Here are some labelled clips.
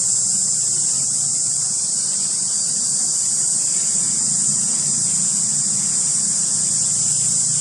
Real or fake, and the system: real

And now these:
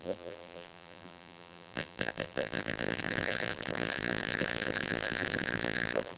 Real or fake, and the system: fake, vocoder, BigVGAN v2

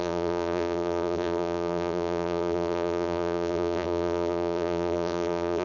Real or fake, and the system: fake, vocoder, BigVGAN v2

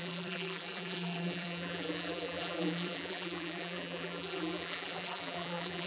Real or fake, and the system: fake, vocoder, BigVGAN v2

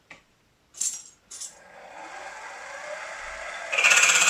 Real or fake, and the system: real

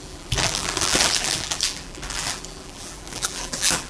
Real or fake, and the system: fake, vocoder, BigVGAN v2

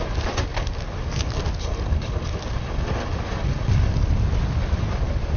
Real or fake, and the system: real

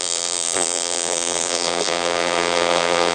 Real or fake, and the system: fake, vocoder, BigVGAN v2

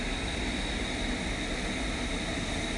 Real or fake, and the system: real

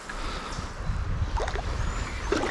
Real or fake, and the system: real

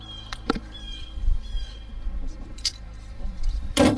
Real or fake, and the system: fake, vocoder, BigVGAN v2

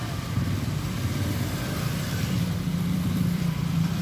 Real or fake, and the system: fake, vocoder, BigVGAN v2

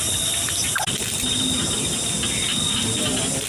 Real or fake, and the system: real